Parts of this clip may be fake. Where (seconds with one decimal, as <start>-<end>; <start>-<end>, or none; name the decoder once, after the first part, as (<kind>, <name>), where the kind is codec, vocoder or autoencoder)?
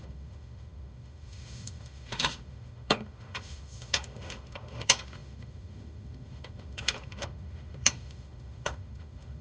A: 0.0-9.4 (autoencoder, DAC-VAE)